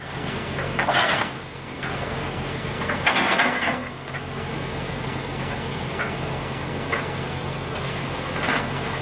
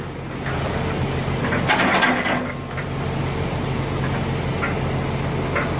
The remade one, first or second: first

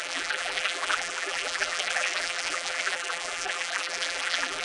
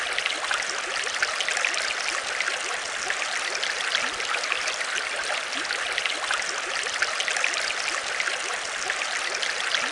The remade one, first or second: first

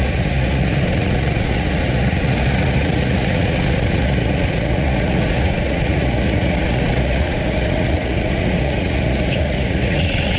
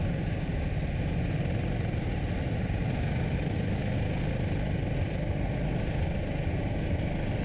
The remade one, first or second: first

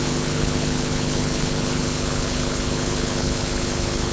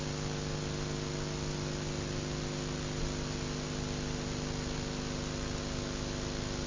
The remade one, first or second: first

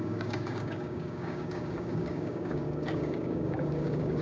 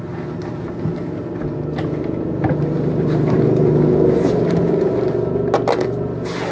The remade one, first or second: first